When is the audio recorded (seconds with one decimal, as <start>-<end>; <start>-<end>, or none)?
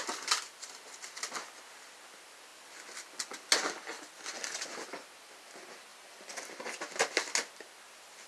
0.0-8.3